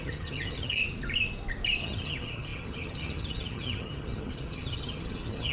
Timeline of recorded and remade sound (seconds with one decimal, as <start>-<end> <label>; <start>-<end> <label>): 0.0-0.8 remade; 0.8-1.8 recorded; 1.8-5.5 remade